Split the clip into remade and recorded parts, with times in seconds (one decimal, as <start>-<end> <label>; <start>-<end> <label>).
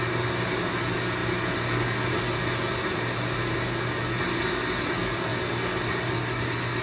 0.0-6.8 recorded